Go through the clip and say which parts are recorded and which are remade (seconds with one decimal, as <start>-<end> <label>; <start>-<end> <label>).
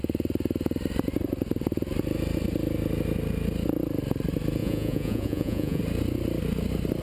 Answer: 0.0-4.6 recorded; 4.6-5.8 remade; 5.8-7.0 recorded